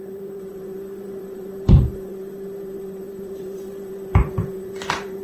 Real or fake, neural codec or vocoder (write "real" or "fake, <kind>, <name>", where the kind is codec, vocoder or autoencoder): fake, vocoder, BigVGAN v2